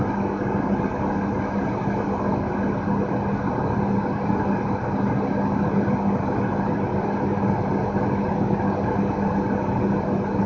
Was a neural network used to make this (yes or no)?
no